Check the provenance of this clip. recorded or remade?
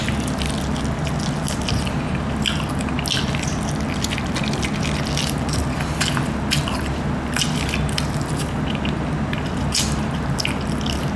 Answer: recorded